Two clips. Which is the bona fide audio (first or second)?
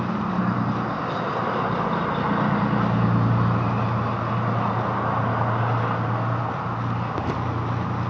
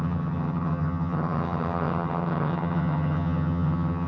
first